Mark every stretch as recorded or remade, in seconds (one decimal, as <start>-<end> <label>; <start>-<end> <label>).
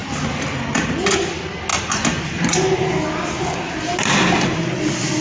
0.0-5.2 recorded